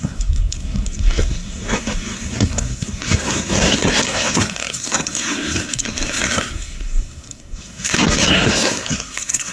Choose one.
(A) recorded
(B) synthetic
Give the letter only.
B